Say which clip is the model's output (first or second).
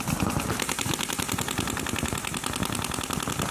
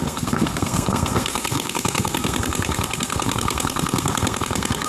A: second